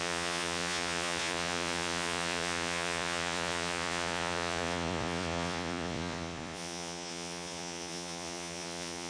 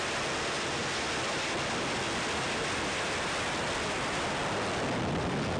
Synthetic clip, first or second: first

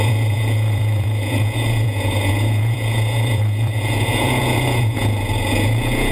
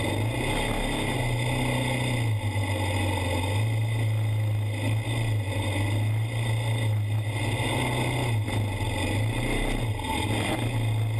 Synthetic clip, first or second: first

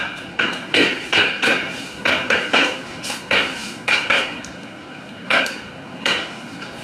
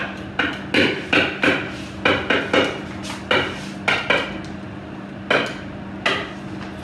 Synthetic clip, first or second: first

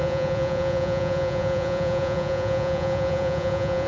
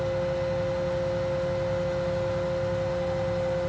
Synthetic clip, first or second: first